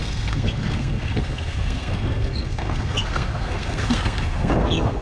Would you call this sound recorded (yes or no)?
no